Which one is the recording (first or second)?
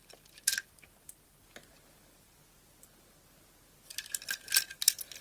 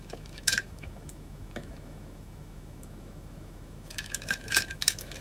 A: first